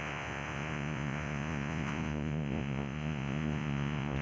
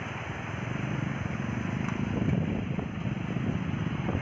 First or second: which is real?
second